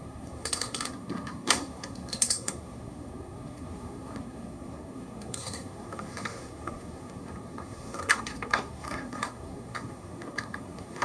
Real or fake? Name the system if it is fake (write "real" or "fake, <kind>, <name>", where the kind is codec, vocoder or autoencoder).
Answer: fake, codec, SNAC